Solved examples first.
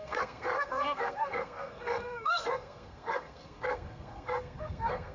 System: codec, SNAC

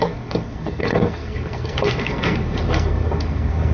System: codec, SNAC